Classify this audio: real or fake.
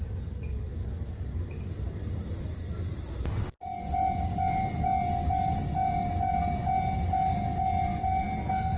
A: real